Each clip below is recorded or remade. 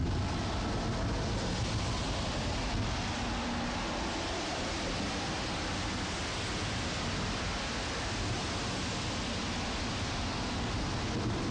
recorded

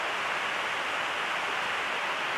recorded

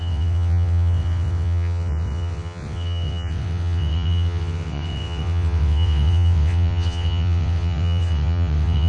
remade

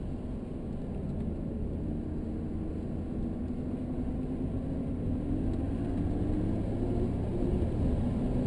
recorded